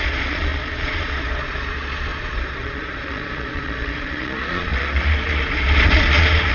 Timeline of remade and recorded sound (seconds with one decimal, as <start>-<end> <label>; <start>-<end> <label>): 0.0-6.5 remade